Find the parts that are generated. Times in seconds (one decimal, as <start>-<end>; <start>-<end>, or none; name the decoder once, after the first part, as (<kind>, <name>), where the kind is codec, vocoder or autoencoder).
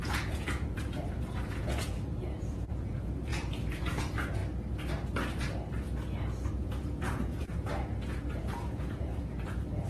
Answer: 0.0-4.4 (vocoder, Vocos); 6.5-9.9